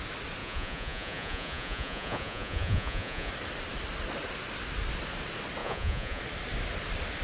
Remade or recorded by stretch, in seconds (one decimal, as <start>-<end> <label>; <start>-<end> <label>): 0.0-0.4 recorded; 0.4-3.3 remade; 3.3-5.6 recorded; 5.6-6.2 remade; 6.2-7.2 recorded